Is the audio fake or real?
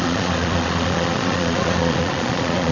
fake